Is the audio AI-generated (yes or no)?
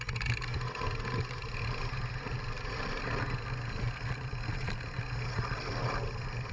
no